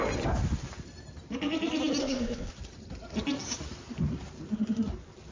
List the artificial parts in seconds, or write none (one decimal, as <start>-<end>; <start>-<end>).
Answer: 2.0-2.5